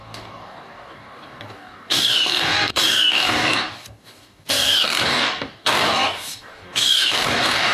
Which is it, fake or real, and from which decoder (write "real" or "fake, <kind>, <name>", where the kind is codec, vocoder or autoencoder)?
fake, codec, DAC